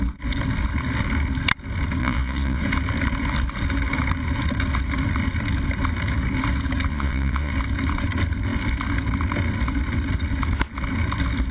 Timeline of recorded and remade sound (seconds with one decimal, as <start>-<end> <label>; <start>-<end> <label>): 0.0-2.0 recorded; 2.0-2.6 remade; 2.6-6.9 recorded; 6.9-7.5 remade; 7.5-11.5 recorded